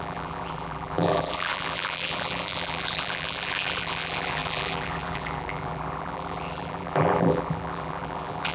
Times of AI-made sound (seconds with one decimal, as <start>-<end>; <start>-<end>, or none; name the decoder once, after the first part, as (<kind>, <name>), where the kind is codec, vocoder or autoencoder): 0.0-8.5 (vocoder, BigVGAN v2)